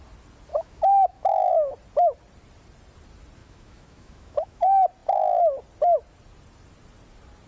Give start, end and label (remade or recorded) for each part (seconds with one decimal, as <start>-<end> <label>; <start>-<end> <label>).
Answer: 0.0-0.5 recorded; 0.5-1.5 remade; 1.5-3.4 recorded; 3.4-4.6 remade; 4.6-7.5 recorded